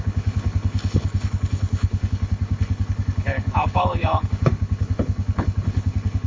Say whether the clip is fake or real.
fake